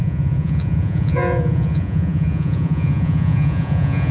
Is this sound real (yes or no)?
no